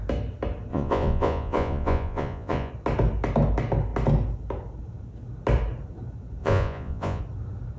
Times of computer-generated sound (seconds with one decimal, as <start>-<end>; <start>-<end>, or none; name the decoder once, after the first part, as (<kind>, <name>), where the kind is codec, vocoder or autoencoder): 0.7-2.7 (vocoder, Vocos); 6.4-7.2